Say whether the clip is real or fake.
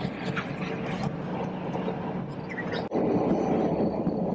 real